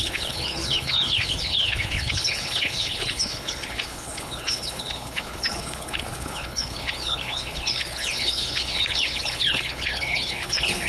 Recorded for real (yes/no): no